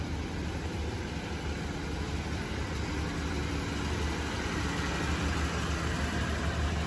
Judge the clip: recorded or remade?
recorded